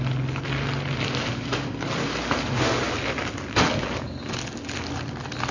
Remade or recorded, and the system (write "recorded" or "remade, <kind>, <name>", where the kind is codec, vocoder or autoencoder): recorded